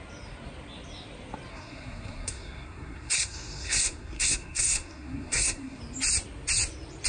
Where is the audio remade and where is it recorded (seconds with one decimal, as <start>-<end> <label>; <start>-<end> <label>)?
0.0-1.5 recorded; 1.5-5.8 remade; 5.8-7.1 recorded